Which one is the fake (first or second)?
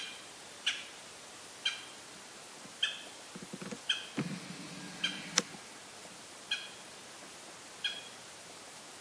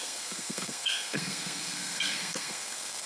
second